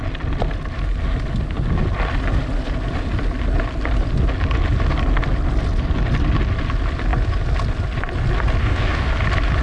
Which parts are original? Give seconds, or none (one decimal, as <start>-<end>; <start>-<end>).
0.0-8.6; 9.1-9.6